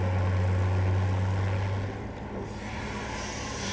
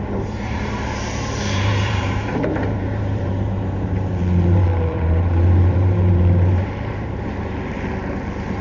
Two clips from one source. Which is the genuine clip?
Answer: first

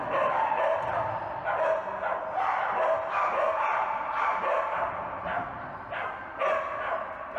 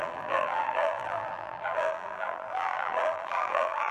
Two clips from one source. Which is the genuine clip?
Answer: first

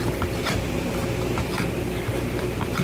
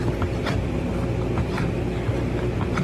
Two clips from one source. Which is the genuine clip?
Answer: second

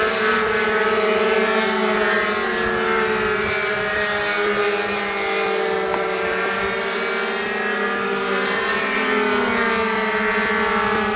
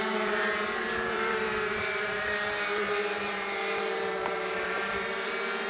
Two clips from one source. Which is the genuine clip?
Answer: first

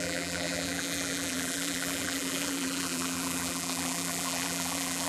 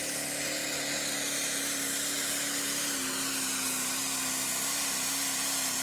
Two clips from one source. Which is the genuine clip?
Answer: second